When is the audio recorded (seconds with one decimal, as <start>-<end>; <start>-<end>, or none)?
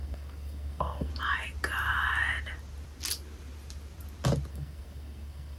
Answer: 1.1-4.5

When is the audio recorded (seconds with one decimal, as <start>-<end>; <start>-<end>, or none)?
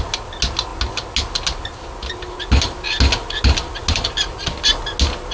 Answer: 0.0-5.3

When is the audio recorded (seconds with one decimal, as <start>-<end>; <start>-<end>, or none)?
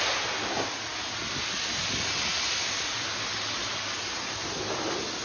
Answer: 0.0-5.2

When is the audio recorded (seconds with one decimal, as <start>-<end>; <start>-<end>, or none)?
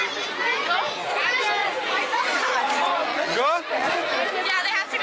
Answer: 0.0-1.6; 4.1-5.0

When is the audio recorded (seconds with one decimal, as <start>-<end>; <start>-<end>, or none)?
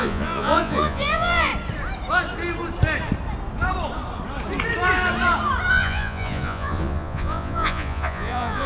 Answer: 1.5-5.7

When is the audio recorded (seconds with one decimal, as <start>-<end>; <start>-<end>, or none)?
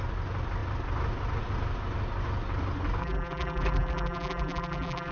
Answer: 0.0-3.0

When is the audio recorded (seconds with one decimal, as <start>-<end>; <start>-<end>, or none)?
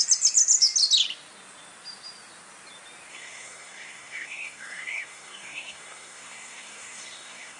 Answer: 0.0-3.1